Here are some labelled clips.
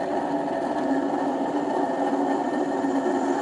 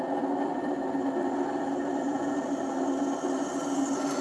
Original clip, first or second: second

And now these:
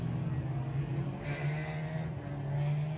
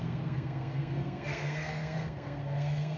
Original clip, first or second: first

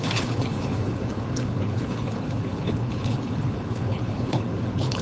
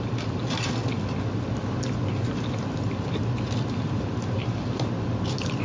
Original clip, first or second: second